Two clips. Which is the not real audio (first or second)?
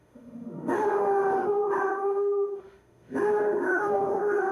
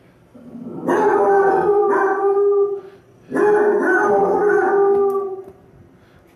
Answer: first